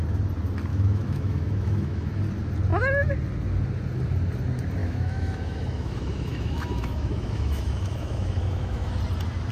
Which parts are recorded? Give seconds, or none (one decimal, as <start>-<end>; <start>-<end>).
0.0-0.7; 2.2-4.8; 9.0-9.5